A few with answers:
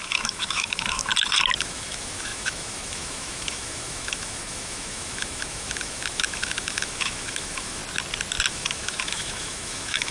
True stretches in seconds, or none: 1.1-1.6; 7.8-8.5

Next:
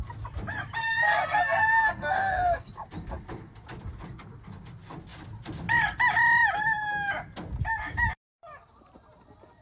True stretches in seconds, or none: 0.0-0.8; 2.7-9.6

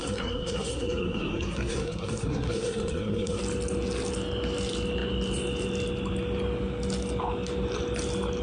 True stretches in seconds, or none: 3.4-8.4

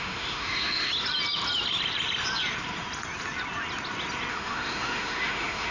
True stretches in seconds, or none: 0.9-4.3

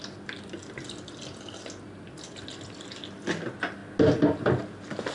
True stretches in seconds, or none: 0.0-5.1